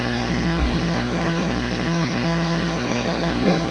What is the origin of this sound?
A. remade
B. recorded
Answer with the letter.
A